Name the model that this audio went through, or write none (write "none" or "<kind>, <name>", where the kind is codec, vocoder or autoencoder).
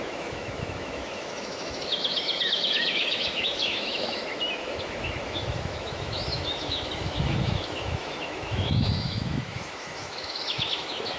autoencoder, DAC-VAE